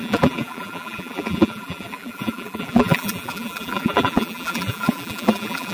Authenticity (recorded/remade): remade